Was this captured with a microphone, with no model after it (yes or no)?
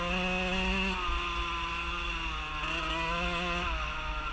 yes